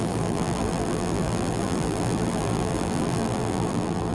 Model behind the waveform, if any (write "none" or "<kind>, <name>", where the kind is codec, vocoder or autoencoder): vocoder, BigVGAN v2